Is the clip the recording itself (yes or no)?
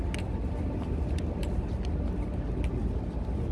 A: yes